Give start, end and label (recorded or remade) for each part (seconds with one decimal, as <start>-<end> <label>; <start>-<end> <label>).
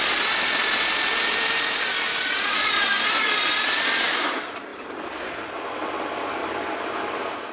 0.0-2.1 recorded; 2.1-3.1 remade; 3.1-7.5 recorded